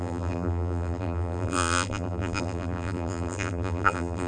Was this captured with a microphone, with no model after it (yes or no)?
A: no